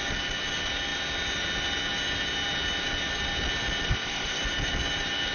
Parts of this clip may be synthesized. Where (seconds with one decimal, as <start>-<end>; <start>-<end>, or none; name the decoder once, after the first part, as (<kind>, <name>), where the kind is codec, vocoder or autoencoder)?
3.9-4.4 (codec, ZipCodec)

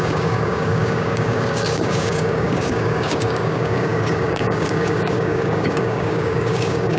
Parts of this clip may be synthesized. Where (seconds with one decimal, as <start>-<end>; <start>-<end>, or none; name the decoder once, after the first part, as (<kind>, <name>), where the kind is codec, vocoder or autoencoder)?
0.0-7.0 (codec, DAC)